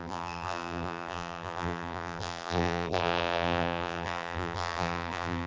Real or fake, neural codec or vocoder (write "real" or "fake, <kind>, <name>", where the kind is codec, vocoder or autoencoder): fake, vocoder, BigVGAN v2